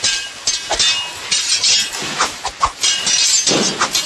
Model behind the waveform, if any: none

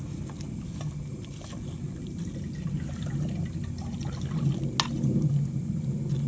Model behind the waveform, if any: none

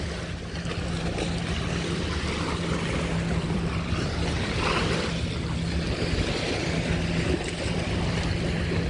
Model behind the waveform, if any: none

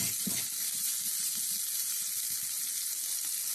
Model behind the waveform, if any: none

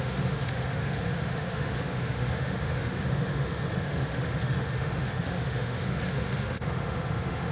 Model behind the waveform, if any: autoencoder, DAC-VAE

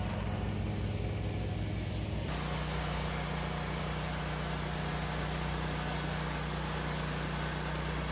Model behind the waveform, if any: none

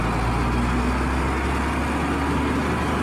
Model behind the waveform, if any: none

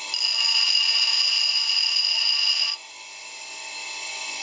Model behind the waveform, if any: none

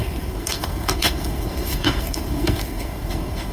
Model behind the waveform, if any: codec, SNAC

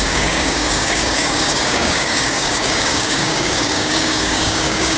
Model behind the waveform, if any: codec, DAC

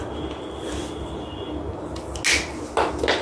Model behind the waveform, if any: none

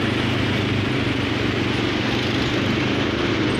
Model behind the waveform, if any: none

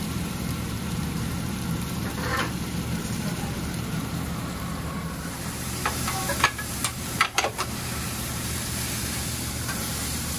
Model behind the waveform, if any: vocoder, BigVGAN v2